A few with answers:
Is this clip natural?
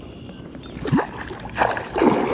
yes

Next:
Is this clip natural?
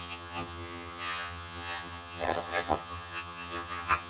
no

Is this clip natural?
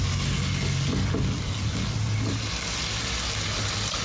yes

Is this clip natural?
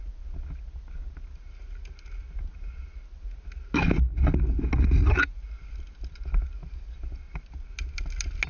yes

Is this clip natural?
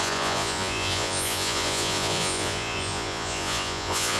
no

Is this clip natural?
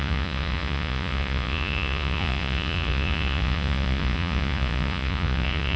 no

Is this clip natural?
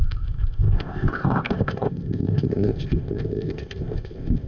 no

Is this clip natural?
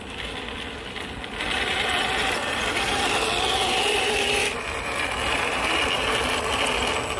yes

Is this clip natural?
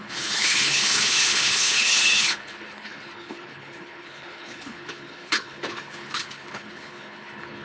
no